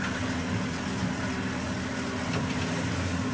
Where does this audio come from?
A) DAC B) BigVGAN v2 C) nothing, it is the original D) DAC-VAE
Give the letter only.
C